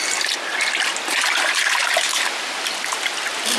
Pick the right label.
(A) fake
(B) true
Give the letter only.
B